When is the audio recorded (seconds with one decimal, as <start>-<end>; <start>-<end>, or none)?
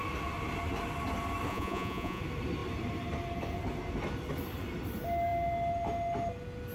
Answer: 0.0-1.5; 2.2-6.7